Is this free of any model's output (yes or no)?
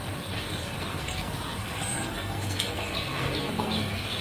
no